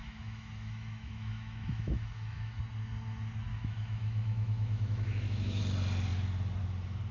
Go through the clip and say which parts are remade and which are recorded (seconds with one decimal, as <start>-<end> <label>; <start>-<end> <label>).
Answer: 0.0-2.6 remade; 2.6-3.5 recorded; 3.5-5.6 remade; 5.6-7.1 recorded